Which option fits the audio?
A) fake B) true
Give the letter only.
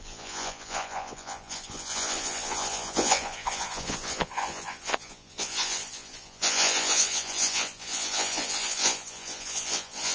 A